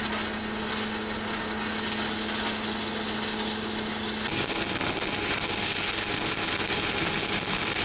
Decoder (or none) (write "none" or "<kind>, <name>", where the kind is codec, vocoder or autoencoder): none